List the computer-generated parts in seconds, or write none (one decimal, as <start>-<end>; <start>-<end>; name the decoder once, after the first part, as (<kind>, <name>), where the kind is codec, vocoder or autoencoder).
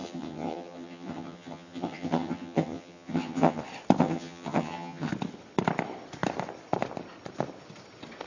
0.0-3.6 (vocoder, HiFi-GAN); 4.0-5.1